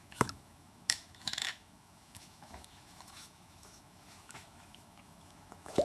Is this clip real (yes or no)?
no